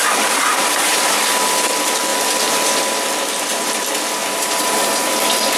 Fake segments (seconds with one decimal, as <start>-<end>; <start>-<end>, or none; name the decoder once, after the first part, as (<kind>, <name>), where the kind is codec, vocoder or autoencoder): 0.5-1.2 (vocoder, BigVGAN v2); 4.2-5.1